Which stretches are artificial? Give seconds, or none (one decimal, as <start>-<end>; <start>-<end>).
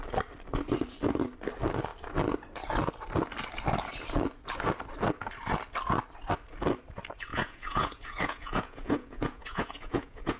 7.3-10.4